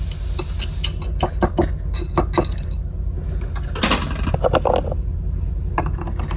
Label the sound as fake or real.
real